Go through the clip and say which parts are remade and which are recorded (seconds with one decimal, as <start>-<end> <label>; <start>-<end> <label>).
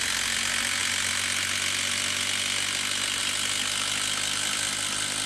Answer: 0.0-5.3 recorded